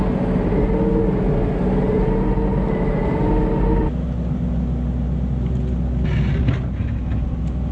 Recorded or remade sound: recorded